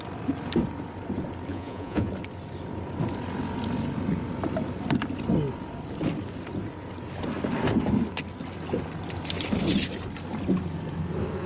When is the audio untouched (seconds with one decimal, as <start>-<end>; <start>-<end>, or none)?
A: 0.0-1.5; 2.1-11.5